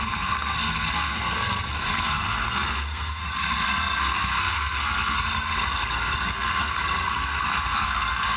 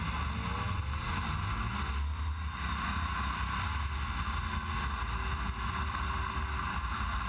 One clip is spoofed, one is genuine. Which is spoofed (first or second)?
first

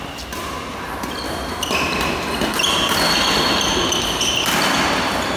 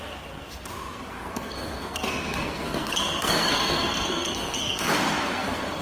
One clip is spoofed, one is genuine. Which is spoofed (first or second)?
second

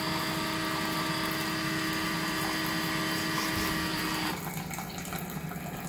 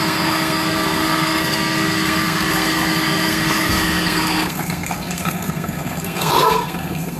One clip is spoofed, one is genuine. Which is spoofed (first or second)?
second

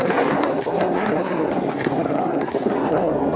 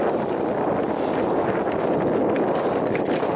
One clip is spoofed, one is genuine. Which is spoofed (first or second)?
first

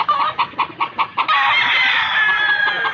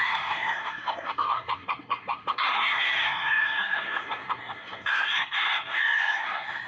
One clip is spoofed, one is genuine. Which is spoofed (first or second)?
second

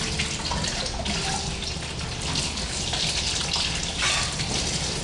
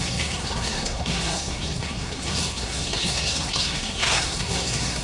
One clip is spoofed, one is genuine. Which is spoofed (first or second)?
second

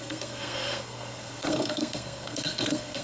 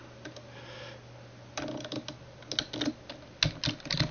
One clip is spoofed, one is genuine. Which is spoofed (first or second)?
first